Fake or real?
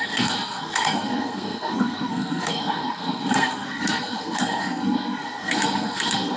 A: fake